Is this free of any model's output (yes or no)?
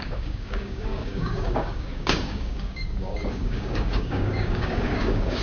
no